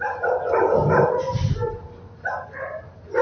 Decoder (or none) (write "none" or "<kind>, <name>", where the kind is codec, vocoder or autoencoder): none